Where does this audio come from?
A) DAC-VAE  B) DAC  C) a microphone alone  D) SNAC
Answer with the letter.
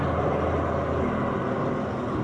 C